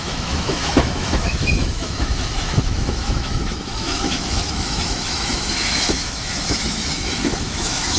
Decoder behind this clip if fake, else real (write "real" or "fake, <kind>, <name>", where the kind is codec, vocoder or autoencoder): fake, autoencoder, DAC-VAE